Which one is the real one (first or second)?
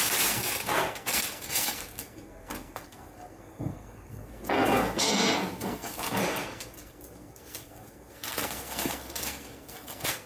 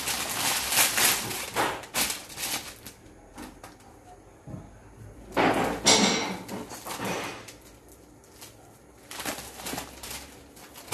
second